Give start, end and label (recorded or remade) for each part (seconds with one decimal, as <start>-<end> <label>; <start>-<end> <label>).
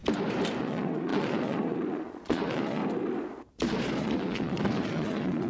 0.0-0.6 recorded; 0.6-2.8 remade; 2.8-4.0 recorded; 4.0-5.5 remade